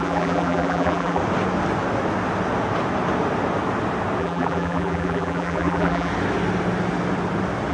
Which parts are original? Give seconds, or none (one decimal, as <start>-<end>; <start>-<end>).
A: 1.2-4.2; 6.1-7.7